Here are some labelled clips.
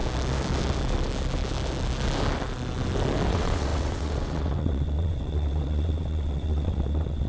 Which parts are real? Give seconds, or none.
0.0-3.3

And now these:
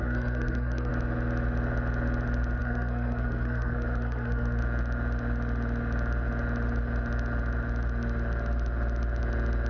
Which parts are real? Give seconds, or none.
0.9-2.6; 4.6-9.7

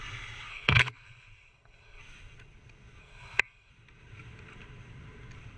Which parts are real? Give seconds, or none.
0.0-0.5; 2.0-3.0; 3.7-5.6

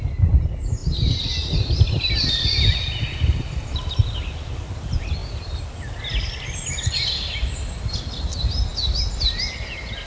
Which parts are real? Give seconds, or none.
0.0-10.1

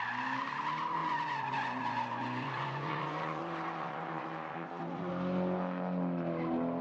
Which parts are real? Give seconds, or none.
0.0-1.0; 5.1-6.8

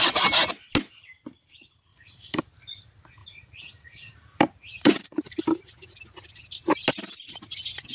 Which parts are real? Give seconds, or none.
0.0-1.9; 2.4-3.2; 5.4-7.9

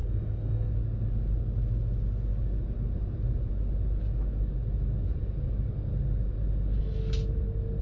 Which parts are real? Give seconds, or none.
0.7-7.8